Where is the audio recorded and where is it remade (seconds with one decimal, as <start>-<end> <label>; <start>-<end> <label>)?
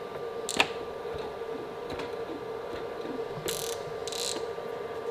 0.0-5.1 recorded